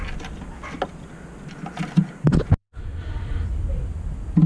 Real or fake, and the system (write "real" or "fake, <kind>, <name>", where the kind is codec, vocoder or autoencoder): real